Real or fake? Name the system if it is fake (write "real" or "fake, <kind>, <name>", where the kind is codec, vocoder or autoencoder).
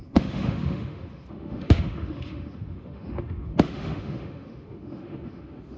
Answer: fake, autoencoder, DAC-VAE